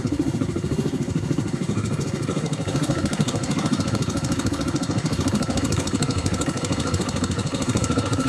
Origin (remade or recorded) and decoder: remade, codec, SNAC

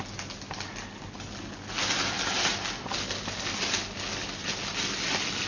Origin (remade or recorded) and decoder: recorded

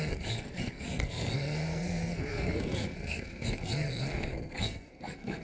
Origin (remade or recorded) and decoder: remade, codec, SNAC